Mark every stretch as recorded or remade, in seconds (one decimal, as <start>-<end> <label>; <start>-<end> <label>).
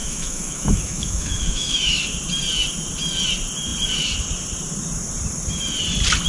0.0-2.0 remade; 2.0-6.3 recorded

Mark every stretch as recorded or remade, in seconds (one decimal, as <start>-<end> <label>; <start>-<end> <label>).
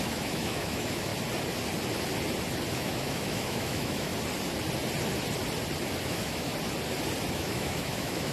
0.0-1.1 remade; 1.1-2.7 recorded; 2.7-4.1 remade; 4.1-6.0 recorded; 6.0-6.5 remade; 6.5-7.3 recorded; 7.3-8.3 remade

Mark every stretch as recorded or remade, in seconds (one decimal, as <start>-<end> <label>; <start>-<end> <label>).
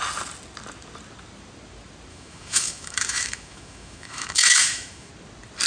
0.0-2.1 recorded; 2.1-5.1 remade; 5.1-5.7 recorded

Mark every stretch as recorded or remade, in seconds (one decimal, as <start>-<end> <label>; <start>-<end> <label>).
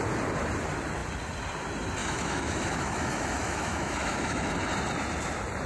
0.0-2.0 recorded; 2.0-4.5 remade; 4.5-5.7 recorded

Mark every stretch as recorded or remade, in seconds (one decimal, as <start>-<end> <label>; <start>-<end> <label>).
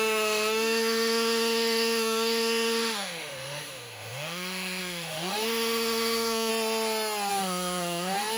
0.0-6.5 remade; 6.5-7.3 recorded; 7.3-8.4 remade